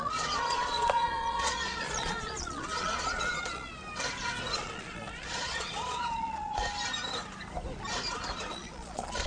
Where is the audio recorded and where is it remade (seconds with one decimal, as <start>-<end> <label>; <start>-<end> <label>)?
0.0-3.7 remade; 3.7-4.5 recorded; 4.5-6.6 remade; 6.6-8.5 recorded; 8.5-9.3 remade